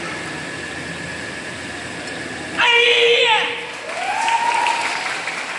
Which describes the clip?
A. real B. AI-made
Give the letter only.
A